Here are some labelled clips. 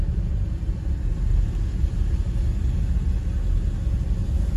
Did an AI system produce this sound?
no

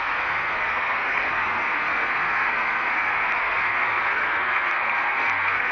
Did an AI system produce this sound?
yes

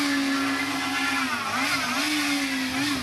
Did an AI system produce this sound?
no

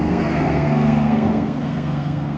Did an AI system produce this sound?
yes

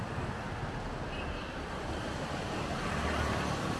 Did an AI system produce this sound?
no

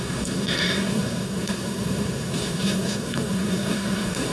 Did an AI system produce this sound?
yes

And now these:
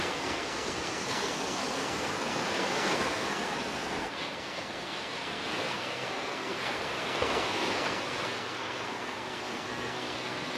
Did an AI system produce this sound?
yes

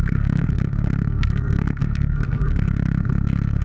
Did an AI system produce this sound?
yes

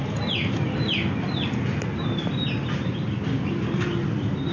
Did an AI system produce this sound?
no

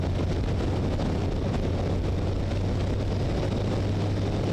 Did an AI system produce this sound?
no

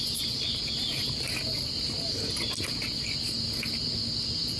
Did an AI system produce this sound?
no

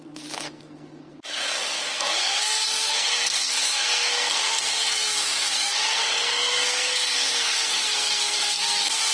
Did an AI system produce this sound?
yes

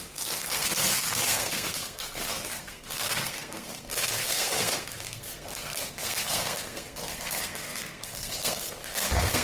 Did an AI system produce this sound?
yes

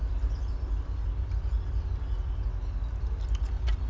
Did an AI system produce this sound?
no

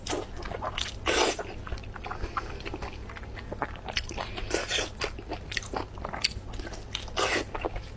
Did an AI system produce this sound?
no